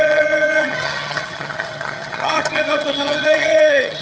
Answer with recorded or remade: remade